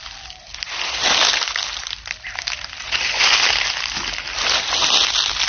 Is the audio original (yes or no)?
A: yes